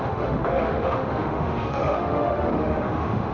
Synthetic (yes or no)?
yes